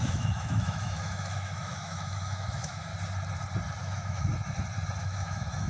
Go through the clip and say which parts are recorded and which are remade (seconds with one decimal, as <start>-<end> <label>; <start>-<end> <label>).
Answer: 0.0-2.9 remade; 2.9-3.8 recorded; 3.8-4.3 remade; 4.3-5.0 recorded; 5.0-5.7 remade